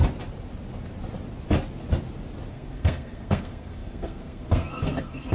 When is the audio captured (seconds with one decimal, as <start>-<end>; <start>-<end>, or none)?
0.0-2.5